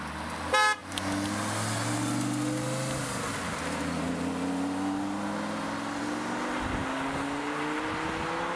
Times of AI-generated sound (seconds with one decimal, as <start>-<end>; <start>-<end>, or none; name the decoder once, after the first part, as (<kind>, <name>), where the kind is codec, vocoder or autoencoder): none